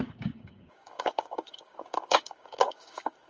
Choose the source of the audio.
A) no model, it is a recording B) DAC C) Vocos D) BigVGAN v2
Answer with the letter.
B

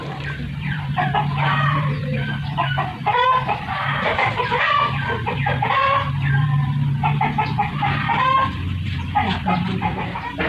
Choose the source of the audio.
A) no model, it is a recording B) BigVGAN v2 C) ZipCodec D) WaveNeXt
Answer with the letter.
B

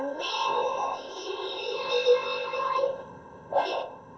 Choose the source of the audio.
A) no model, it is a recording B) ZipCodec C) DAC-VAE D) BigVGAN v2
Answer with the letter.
B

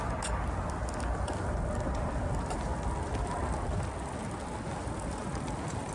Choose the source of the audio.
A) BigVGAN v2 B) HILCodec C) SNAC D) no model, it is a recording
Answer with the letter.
D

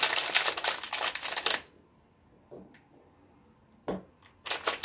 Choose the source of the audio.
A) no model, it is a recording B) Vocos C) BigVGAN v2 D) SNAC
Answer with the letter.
A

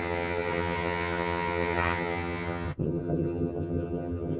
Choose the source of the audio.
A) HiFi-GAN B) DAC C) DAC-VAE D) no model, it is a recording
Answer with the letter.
A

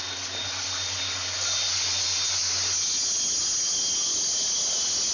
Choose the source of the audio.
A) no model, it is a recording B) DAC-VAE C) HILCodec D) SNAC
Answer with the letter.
A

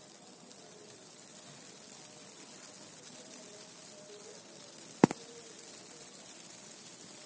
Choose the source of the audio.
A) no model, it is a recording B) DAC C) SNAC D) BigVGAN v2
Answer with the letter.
A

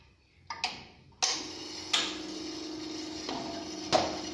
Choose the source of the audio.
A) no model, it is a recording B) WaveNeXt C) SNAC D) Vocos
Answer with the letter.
A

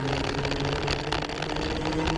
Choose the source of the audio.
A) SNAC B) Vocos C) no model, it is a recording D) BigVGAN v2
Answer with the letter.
C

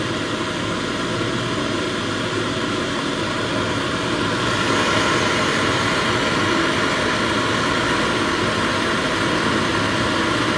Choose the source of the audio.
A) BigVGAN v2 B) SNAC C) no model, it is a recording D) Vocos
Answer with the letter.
C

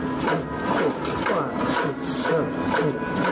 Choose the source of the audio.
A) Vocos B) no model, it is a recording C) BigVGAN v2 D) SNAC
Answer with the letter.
B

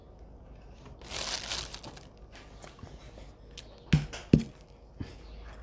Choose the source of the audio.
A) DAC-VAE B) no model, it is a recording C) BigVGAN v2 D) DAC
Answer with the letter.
B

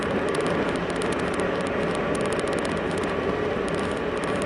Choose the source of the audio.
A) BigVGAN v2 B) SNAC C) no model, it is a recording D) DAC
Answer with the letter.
C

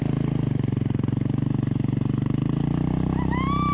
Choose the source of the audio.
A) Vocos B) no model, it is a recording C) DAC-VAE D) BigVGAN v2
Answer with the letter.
D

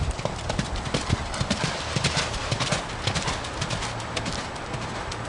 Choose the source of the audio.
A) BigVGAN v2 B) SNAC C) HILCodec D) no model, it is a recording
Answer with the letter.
D